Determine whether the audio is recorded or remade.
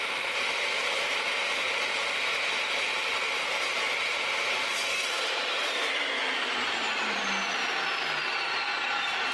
remade